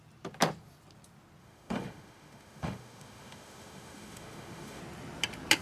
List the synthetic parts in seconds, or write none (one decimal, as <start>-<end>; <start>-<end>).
1.4-4.8